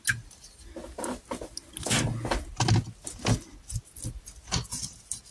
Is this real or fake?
real